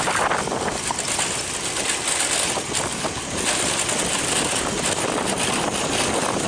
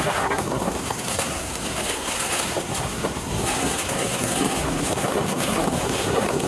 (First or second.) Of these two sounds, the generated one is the second